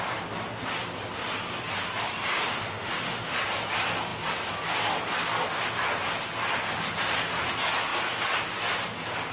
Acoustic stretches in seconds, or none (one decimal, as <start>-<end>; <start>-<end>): 0.0-2.3; 3.4-9.3